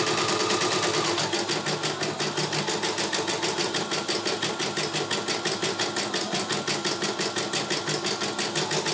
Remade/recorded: recorded